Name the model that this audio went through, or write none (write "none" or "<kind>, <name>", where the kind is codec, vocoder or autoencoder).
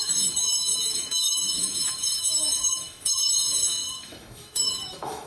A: autoencoder, DAC-VAE